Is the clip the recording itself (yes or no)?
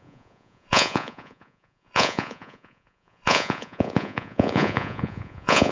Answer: no